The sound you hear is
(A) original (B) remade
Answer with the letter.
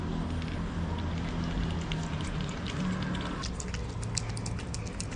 A